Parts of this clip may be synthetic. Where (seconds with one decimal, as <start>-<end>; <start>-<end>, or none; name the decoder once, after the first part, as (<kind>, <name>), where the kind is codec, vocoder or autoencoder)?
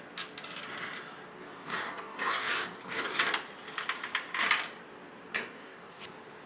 1.4-3.2 (codec, DAC); 5.3-6.0